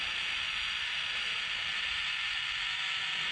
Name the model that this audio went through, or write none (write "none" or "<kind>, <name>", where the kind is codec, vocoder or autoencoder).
none